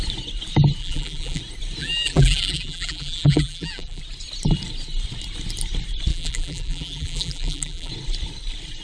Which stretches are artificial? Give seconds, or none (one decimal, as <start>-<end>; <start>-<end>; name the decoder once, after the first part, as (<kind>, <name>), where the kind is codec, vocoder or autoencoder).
0.8-1.4 (vocoder, BigVGAN v2); 1.8-4.0; 6.1-7.9